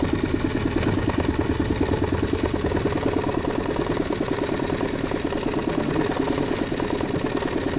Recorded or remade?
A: recorded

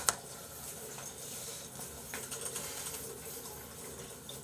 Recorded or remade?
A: recorded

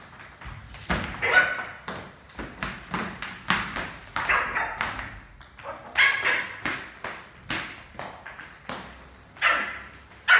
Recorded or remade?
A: recorded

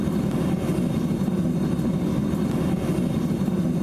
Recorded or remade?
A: recorded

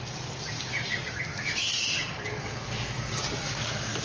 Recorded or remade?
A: recorded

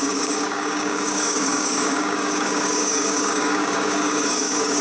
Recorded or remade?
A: remade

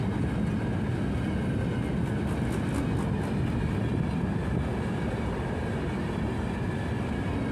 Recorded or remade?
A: recorded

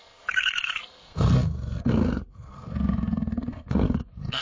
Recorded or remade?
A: remade